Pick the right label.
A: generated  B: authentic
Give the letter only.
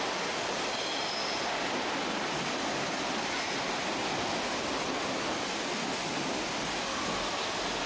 B